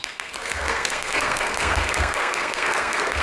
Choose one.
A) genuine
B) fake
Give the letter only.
B